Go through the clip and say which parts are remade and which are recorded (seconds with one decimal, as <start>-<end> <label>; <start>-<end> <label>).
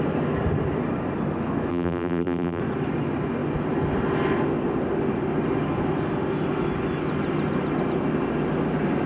0.0-1.7 recorded; 1.7-2.6 remade; 2.6-9.1 recorded